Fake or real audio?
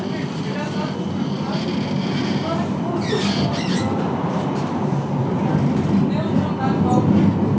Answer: real